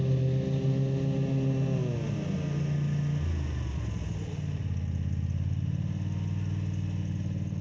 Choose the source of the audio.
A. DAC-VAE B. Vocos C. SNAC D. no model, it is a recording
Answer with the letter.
D